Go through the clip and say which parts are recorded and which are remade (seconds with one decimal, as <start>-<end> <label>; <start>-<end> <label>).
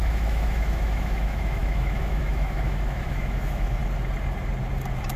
0.0-3.8 remade; 3.8-5.2 recorded